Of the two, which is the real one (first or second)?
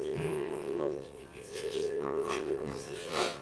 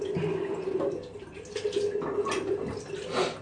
second